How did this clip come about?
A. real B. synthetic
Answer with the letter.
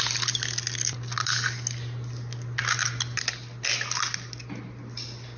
A